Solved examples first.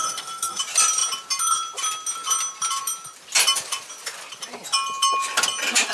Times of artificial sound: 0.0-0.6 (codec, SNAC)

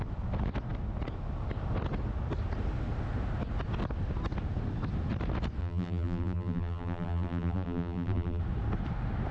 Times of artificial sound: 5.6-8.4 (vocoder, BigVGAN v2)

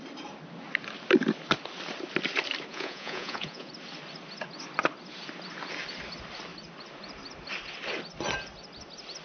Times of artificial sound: 2.7-3.7 (vocoder, Vocos)

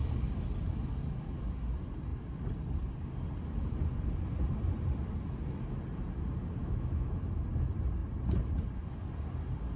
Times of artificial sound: 6.6-7.2 (autoencoder, DAC-VAE)